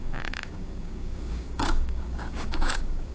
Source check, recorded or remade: remade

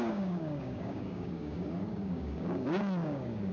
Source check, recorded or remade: remade